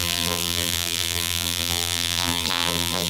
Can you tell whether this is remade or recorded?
remade